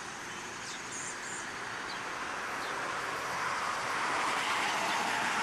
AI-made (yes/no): no